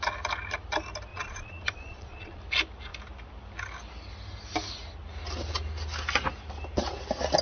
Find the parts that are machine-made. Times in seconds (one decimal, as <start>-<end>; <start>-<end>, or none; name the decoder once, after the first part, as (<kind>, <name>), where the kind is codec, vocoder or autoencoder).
1.1-2.4 (vocoder, Vocos)

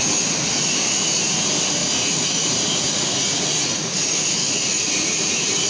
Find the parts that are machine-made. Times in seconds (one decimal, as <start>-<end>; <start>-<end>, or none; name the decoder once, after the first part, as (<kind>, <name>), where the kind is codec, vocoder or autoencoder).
1.8-5.2 (vocoder, Vocos)